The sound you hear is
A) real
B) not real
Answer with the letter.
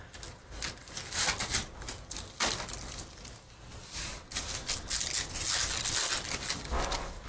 A